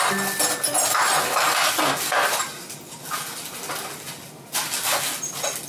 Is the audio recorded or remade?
recorded